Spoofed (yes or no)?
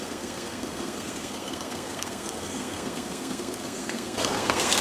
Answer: yes